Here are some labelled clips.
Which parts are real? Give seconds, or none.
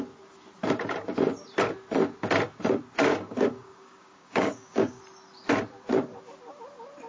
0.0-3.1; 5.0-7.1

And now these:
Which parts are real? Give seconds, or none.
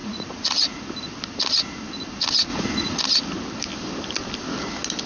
0.8-2.5; 3.0-5.1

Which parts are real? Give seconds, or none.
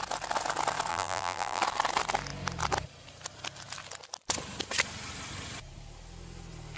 0.0-0.9; 1.6-6.8